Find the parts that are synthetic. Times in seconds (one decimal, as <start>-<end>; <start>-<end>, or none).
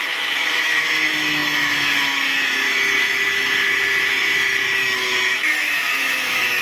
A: 0.0-6.6